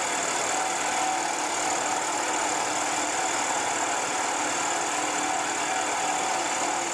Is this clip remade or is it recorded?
recorded